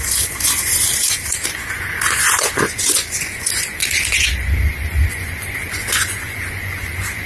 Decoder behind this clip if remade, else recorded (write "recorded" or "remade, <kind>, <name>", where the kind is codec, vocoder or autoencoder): remade, vocoder, Vocos